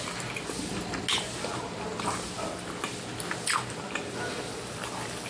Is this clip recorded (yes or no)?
yes